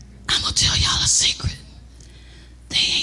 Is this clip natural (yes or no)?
yes